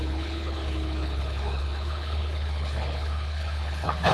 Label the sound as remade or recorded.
remade